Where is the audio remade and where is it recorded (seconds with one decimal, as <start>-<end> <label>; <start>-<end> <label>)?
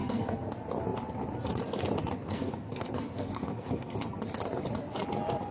0.0-0.5 remade; 0.5-2.0 recorded; 2.0-4.2 remade; 4.2-5.5 recorded